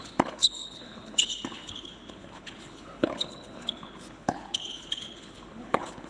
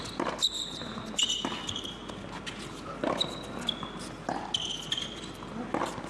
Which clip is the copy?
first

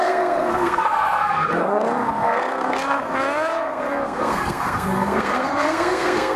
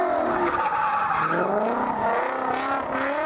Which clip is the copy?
first